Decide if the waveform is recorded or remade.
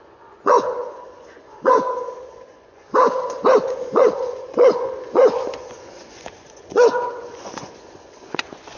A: remade